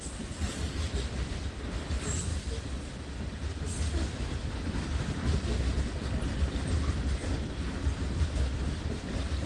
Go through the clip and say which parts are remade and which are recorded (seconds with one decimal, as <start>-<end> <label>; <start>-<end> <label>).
0.0-9.5 recorded